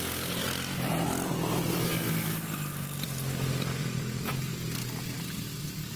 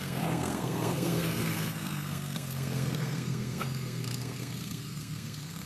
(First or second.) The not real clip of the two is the second